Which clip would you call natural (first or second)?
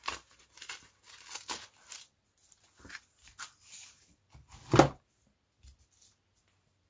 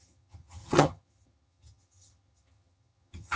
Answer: first